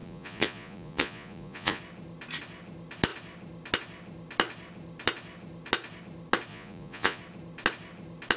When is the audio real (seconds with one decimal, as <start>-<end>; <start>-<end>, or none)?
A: 1.8-6.5; 7.2-8.4